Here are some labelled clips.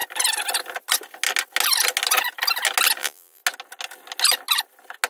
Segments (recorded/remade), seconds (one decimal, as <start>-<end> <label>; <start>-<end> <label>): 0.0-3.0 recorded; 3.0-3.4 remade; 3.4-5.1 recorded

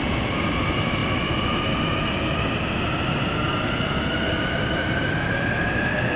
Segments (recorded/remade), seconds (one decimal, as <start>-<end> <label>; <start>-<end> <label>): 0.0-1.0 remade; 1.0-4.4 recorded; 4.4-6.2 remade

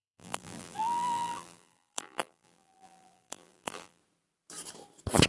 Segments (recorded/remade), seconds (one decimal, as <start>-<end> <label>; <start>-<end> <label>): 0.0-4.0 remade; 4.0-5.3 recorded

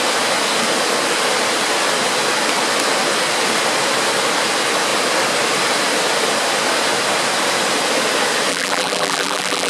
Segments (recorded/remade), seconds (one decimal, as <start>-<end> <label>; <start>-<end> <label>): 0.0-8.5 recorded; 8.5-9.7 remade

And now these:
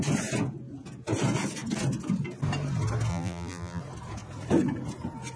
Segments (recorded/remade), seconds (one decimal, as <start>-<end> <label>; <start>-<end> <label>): 0.0-3.1 recorded; 3.1-3.8 remade; 3.8-5.4 recorded

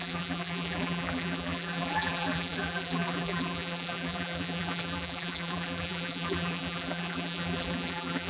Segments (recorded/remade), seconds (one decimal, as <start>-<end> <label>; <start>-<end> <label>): 0.0-8.3 remade

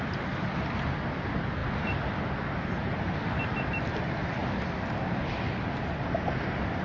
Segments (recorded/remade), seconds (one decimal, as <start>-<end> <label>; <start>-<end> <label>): 0.0-1.6 remade; 1.6-2.8 recorded; 2.8-4.4 remade; 4.4-5.2 recorded; 5.2-6.8 remade

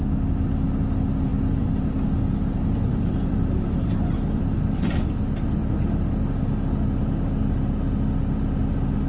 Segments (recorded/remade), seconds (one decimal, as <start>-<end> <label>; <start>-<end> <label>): 0.0-1.3 recorded; 1.3-5.1 remade; 5.1-9.1 recorded